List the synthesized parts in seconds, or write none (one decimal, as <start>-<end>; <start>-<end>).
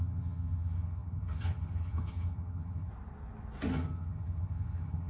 0.0-2.9; 3.7-5.1